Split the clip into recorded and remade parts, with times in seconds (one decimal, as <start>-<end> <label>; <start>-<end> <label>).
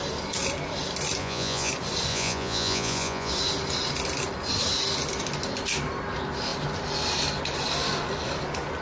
0.0-1.2 recorded; 1.2-1.7 remade; 1.7-2.1 recorded; 2.1-3.3 remade; 3.3-8.8 recorded